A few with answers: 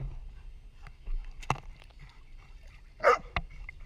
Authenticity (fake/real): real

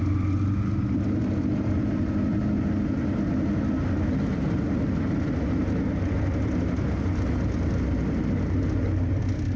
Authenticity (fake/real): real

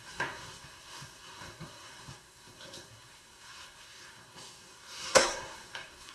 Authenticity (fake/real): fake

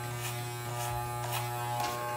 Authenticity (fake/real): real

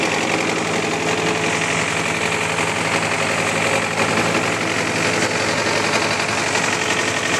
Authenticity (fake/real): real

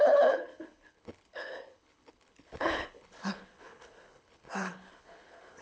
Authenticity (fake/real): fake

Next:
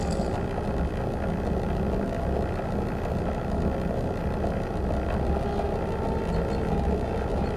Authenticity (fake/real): real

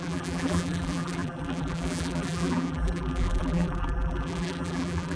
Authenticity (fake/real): fake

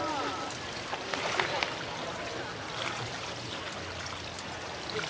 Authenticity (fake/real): real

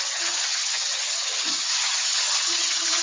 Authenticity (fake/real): fake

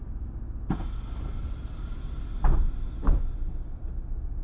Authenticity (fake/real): real